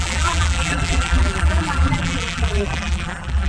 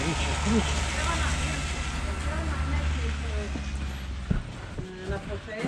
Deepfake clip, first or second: first